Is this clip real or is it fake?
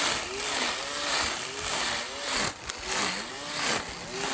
real